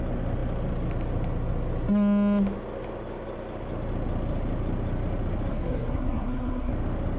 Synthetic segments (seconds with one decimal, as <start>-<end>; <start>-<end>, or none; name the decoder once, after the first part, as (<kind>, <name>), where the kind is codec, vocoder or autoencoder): 5.5-6.7 (codec, SNAC)